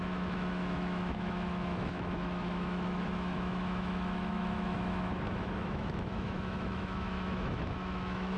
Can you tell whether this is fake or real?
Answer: fake